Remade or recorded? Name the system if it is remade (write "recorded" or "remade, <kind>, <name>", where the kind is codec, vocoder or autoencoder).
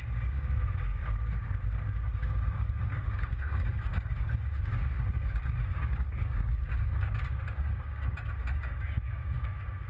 remade, codec, DAC